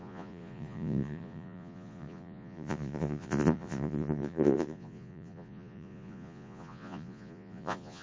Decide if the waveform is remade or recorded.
remade